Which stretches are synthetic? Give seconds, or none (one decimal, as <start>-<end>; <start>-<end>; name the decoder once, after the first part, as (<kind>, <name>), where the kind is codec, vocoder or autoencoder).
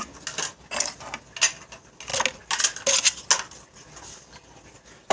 none